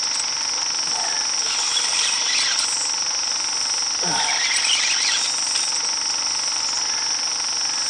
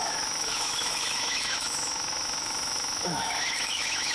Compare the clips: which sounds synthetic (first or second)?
second